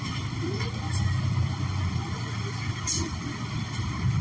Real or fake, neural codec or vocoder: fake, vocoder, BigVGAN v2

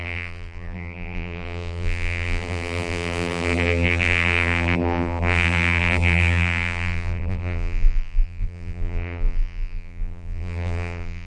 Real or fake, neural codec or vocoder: fake, vocoder, BigVGAN v2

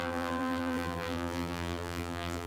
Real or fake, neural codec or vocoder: fake, vocoder, BigVGAN v2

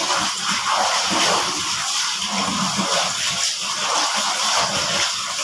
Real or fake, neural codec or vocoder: real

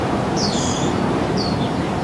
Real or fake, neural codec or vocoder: fake, vocoder, BigVGAN v2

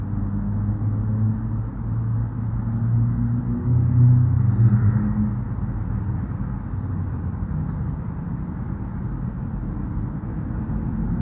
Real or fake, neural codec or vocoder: real